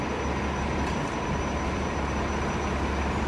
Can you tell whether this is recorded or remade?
recorded